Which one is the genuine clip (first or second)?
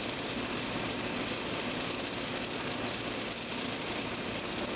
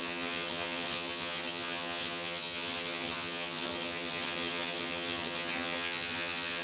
first